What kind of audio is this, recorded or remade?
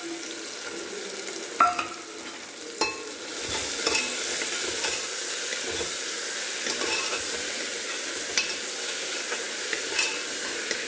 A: recorded